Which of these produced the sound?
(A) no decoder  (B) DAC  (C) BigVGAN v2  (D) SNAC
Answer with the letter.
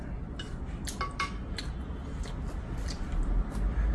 A